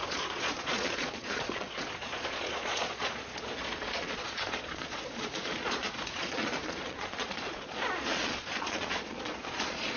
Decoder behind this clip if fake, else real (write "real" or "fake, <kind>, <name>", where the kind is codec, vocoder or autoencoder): fake, vocoder, Vocos